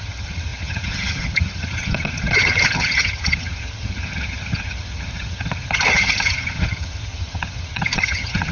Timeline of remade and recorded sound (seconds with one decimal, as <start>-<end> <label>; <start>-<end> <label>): 0.0-8.5 remade